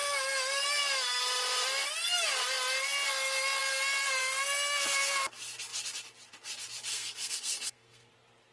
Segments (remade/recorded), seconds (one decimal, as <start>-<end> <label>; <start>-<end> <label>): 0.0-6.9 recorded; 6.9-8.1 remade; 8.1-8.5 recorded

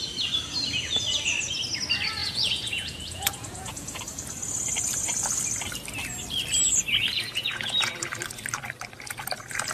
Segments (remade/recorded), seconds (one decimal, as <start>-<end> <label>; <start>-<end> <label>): 0.0-2.2 recorded; 2.2-4.0 remade; 4.0-7.1 recorded; 7.1-8.1 remade; 8.1-9.7 recorded

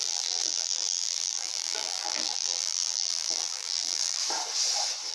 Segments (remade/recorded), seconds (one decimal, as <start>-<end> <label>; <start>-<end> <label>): 0.0-4.2 remade; 4.2-5.1 recorded

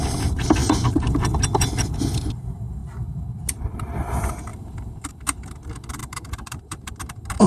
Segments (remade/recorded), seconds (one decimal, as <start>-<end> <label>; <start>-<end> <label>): 0.0-0.6 recorded; 0.6-1.1 remade; 1.1-4.5 recorded; 4.5-5.1 remade; 5.1-6.0 recorded; 6.0-6.9 remade; 6.9-7.5 recorded

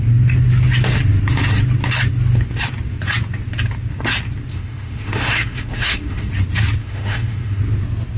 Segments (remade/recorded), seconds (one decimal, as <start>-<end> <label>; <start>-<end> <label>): 0.0-4.5 recorded; 4.5-6.3 remade; 6.3-6.8 recorded; 6.8-7.6 remade; 7.6-8.2 recorded

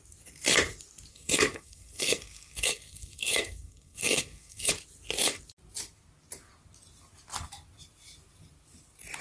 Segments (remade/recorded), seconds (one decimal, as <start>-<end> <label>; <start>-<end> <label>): 0.0-1.1 recorded; 1.1-4.7 remade; 4.7-9.2 recorded